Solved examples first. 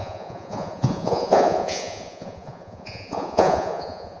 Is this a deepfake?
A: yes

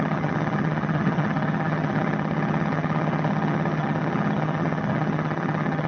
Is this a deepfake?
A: yes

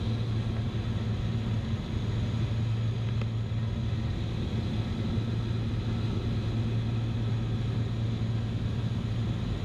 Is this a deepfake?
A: no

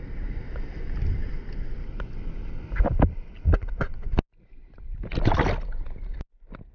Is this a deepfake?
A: no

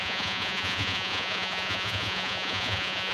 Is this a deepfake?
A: yes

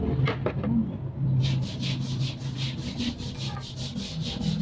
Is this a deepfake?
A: no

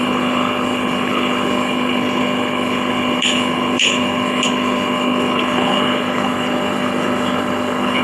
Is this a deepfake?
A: yes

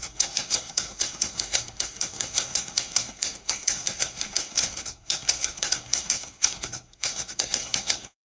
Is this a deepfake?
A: yes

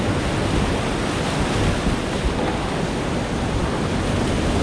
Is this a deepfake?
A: no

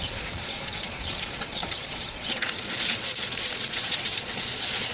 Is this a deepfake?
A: yes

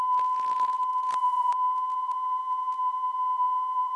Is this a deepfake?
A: yes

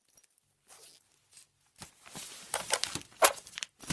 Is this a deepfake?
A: no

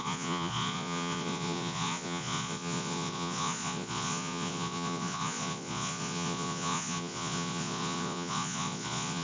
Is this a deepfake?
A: yes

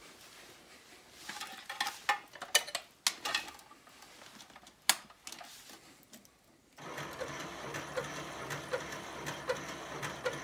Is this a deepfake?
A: no